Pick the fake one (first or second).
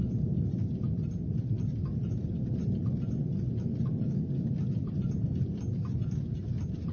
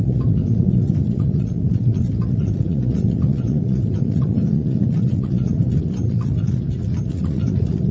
second